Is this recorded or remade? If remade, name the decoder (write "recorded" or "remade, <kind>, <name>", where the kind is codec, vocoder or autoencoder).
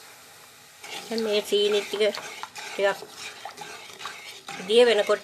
recorded